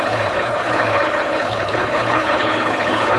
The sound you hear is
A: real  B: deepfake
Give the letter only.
B